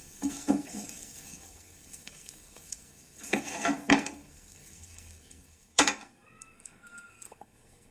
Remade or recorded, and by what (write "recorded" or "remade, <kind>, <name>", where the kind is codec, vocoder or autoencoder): remade, codec, SNAC